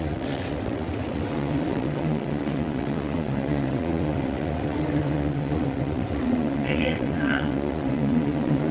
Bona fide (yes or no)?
no